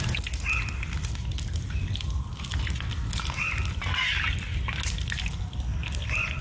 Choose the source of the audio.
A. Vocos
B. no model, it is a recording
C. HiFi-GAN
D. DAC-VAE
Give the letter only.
B